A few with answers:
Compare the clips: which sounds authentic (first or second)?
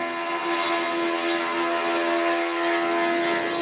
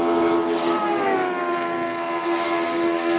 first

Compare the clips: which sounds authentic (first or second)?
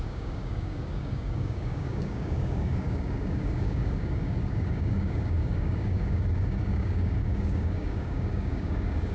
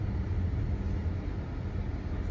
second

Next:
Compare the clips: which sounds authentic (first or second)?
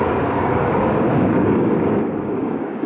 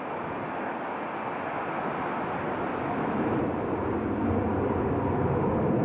second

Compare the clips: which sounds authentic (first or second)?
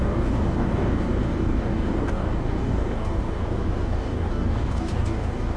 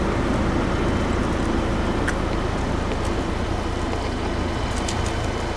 second